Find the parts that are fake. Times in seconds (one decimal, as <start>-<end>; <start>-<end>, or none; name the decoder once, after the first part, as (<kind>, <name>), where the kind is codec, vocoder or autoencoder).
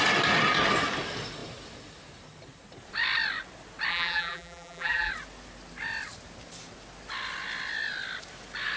3.9-5.1 (vocoder, BigVGAN v2)